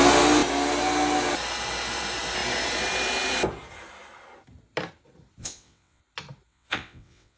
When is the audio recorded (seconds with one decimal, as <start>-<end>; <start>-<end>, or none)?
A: 0.0-5.4; 6.0-6.5